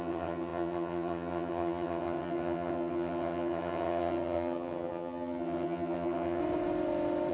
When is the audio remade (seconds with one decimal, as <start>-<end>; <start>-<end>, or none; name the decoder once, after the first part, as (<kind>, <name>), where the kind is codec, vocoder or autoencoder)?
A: 0.0-6.4 (vocoder, HiFi-GAN)

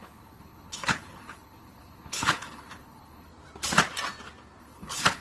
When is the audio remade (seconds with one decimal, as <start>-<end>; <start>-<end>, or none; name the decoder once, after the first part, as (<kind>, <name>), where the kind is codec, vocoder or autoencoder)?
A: 0.0-3.3 (codec, HILCodec); 4.6-5.2